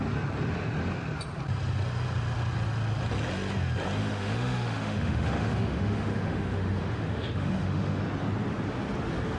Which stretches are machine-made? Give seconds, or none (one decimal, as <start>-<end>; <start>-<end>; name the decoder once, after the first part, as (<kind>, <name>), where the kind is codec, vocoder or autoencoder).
4.0-8.0 (autoencoder, DAC-VAE)